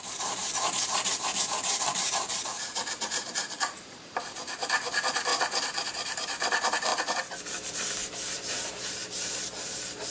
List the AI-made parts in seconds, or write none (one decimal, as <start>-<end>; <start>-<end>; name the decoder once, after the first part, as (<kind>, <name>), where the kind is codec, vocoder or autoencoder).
0.0-5.3 (vocoder, BigVGAN v2); 5.9-6.9; 7.7-10.1